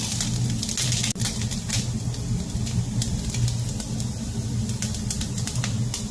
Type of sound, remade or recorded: recorded